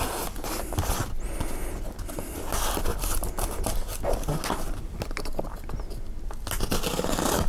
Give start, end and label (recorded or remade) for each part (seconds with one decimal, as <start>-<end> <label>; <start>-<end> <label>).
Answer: 0.0-7.5 recorded